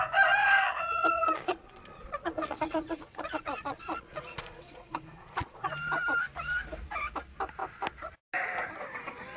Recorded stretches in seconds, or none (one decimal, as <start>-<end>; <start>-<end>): 0.0-0.4; 5.7-9.4

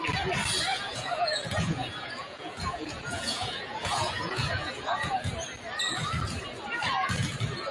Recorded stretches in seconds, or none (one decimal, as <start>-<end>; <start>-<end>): 0.0-0.7; 5.3-7.7